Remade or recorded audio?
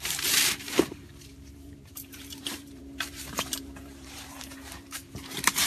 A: remade